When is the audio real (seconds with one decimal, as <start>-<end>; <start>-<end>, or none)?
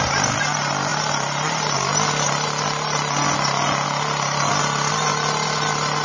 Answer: 0.0-6.0